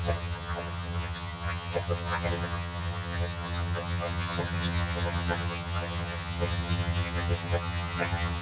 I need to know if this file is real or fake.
fake